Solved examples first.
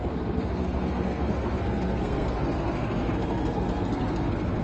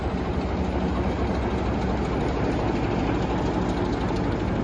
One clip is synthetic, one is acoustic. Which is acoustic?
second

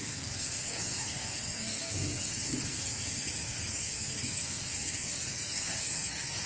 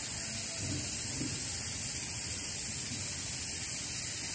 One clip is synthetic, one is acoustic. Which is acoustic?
second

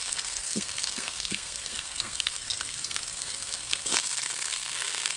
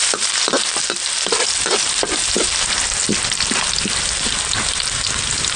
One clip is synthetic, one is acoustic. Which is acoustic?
second